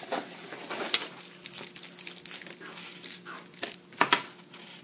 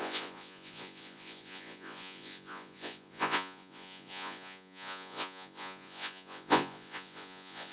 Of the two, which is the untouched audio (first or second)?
first